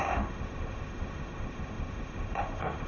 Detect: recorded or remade remade